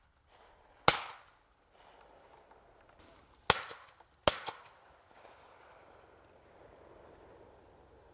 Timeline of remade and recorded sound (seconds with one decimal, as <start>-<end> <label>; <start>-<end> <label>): 0.0-8.1 recorded